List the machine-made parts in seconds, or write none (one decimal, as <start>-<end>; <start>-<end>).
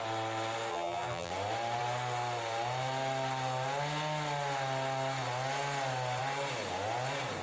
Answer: 0.7-1.3